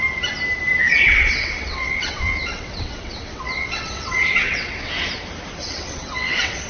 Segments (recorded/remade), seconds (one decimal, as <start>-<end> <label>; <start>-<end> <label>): 0.0-0.9 recorded; 0.9-4.9 remade; 4.9-5.6 recorded; 5.6-6.7 remade